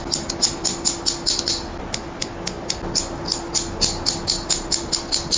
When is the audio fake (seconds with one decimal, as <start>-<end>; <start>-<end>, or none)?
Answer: none